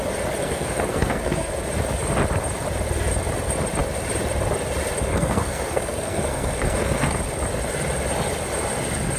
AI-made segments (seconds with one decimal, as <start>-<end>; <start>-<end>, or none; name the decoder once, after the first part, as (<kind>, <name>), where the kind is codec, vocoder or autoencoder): 0.4-1.5 (codec, SNAC); 5.1-7.2